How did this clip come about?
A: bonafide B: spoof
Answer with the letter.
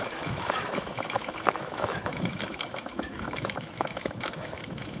B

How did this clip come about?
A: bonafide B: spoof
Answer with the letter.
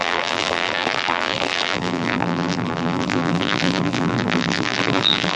B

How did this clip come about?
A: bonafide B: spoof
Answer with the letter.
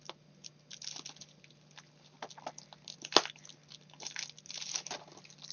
A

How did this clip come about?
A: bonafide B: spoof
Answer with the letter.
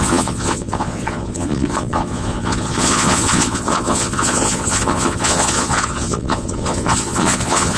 B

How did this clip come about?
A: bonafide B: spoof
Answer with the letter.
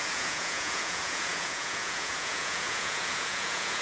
B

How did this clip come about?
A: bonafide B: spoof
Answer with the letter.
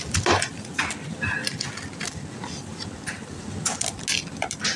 A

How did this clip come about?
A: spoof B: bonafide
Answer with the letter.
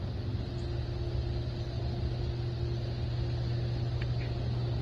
B